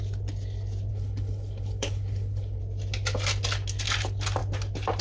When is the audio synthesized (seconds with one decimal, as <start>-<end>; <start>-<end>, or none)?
0.9-2.6